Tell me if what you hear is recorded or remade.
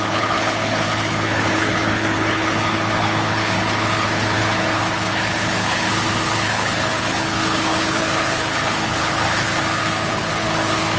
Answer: remade